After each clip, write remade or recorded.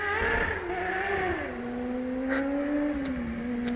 recorded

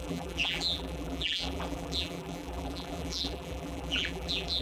remade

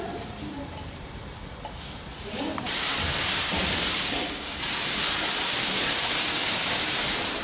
remade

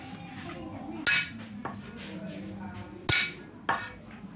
recorded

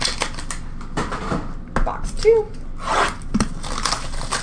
recorded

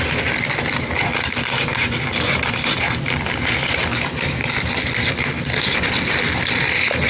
recorded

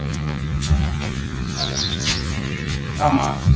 remade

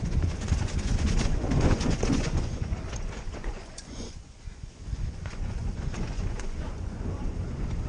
remade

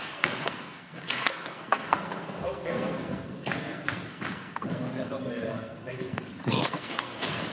remade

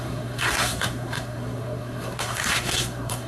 remade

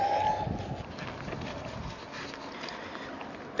recorded